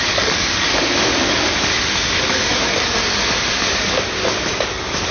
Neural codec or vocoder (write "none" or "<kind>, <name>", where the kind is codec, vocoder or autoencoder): codec, DAC